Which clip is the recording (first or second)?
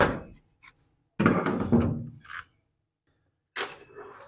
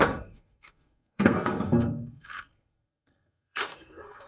first